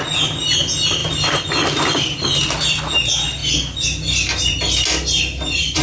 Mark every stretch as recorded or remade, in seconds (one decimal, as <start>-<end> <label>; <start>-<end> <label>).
0.0-5.8 recorded